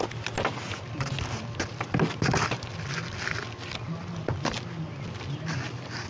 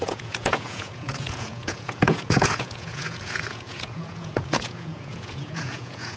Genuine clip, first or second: first